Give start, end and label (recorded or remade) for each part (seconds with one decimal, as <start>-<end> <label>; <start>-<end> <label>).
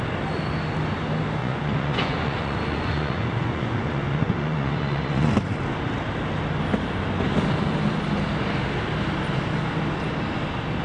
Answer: 0.0-1.4 recorded; 1.4-5.3 remade; 5.3-10.8 recorded